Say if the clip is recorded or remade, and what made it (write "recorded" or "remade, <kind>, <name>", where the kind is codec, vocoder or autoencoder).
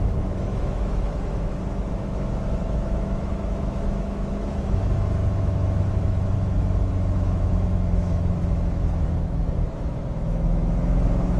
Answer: remade, autoencoder, DAC-VAE